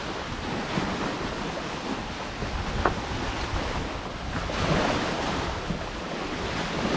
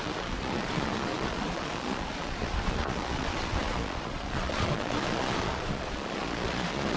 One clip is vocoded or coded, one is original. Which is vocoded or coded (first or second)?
second